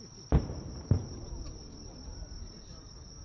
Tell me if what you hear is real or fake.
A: real